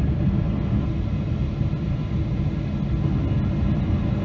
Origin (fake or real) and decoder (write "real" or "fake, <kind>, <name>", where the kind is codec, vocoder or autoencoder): real